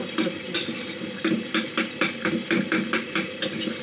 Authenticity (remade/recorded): recorded